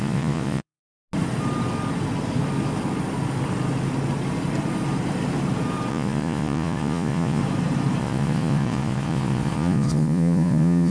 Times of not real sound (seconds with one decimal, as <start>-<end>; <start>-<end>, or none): 0.0-0.8; 5.9-7.4; 8.0-10.9